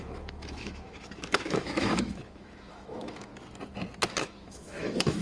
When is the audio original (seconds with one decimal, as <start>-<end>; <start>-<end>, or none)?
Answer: 3.3-4.2